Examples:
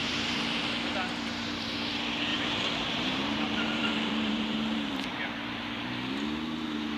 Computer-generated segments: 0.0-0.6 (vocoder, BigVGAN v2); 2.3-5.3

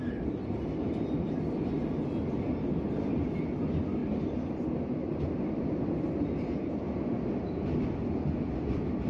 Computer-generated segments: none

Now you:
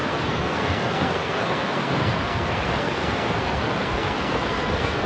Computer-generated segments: 0.0-5.1 (codec, SNAC)